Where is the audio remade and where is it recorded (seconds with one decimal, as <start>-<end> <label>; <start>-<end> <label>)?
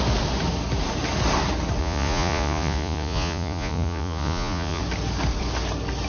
0.0-1.8 recorded; 1.8-4.8 remade; 4.8-6.1 recorded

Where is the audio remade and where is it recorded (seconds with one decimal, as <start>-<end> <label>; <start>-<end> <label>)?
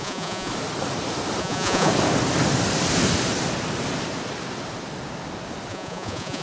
0.0-0.5 remade; 0.5-1.4 recorded; 1.4-1.9 remade; 1.9-5.7 recorded; 5.7-6.4 remade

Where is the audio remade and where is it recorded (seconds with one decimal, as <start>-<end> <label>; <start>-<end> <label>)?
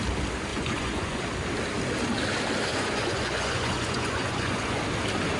0.0-0.5 recorded; 0.5-1.2 remade; 1.2-2.7 recorded; 2.7-4.8 remade; 4.8-5.4 recorded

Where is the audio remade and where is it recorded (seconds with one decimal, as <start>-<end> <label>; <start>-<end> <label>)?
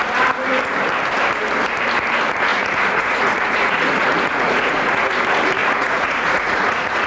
0.0-2.5 recorded; 2.5-5.1 remade; 5.1-5.6 recorded; 5.6-7.1 remade